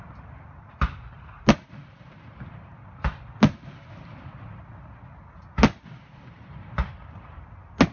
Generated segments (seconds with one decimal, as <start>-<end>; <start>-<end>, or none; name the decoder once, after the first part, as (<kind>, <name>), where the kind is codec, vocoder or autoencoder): none